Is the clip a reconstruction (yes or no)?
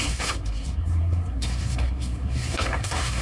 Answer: yes